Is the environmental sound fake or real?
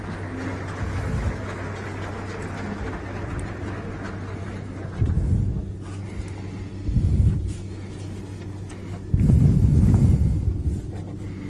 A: real